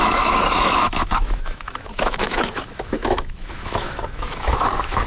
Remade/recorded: remade